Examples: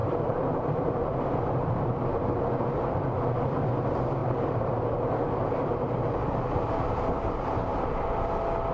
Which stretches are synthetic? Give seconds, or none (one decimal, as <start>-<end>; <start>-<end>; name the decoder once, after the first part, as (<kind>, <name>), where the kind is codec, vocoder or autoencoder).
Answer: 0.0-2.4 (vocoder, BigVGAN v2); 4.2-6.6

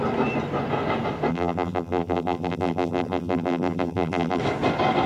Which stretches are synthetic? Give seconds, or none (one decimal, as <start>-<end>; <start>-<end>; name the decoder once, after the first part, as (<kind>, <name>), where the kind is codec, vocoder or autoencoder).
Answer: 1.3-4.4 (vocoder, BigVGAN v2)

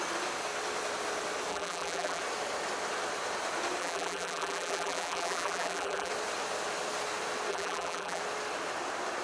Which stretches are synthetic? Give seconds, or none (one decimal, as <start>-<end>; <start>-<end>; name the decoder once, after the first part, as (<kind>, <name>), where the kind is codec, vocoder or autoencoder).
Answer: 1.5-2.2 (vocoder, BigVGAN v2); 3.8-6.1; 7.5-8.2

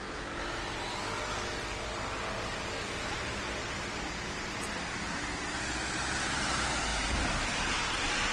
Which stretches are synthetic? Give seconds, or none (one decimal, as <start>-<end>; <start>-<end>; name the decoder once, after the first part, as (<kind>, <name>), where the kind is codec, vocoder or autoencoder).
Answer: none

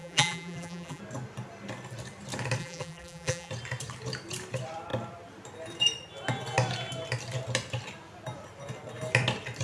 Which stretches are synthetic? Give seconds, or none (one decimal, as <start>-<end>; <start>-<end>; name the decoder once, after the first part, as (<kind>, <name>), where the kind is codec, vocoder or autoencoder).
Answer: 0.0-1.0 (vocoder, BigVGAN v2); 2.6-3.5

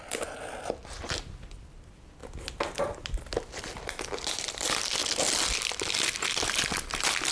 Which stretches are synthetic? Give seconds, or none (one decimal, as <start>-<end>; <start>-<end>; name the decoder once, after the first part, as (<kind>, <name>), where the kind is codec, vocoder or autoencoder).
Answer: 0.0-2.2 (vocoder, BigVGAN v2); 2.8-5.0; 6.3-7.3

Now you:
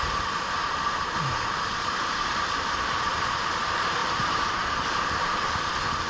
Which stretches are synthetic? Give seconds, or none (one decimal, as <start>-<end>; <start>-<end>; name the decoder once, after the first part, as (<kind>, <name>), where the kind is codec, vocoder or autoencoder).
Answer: 0.0-3.6 (vocoder, BigVGAN v2); 4.0-4.5